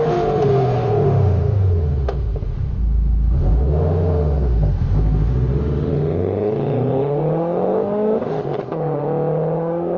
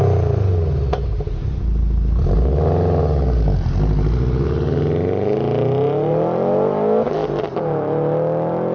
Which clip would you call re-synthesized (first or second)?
first